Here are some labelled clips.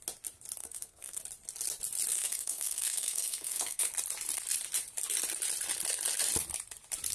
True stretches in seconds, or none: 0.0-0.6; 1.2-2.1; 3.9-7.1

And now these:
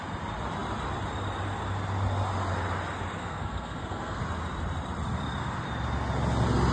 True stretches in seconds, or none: 0.0-3.2; 4.2-6.7

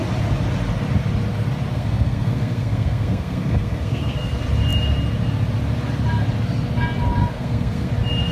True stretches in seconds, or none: 0.0-1.7; 4.3-7.2; 7.9-8.3

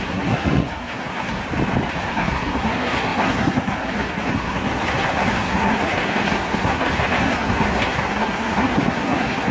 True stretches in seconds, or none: 1.4-2.0

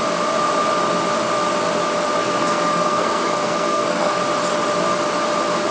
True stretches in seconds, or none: 0.0-2.2; 4.2-5.7

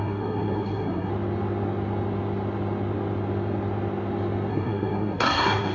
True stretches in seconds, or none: 1.1-4.5

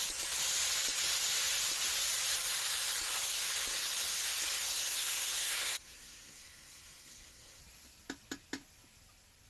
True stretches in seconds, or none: 0.0-4.7; 7.6-9.5

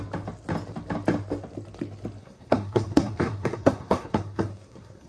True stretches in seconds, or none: 0.0-2.2